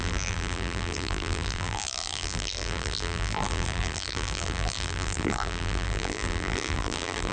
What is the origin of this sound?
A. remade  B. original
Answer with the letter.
A